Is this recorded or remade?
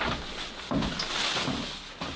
recorded